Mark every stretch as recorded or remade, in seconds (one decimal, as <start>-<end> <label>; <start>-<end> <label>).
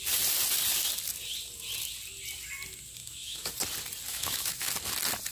0.0-3.0 recorded; 3.0-3.5 remade; 3.5-4.1 recorded; 4.1-4.7 remade; 4.7-5.3 recorded